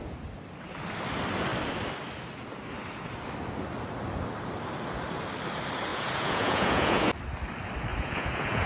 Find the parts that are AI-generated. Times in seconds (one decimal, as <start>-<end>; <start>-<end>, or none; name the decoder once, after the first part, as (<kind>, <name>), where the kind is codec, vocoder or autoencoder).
5.9-7.1 (vocoder, Vocos); 7.9-8.7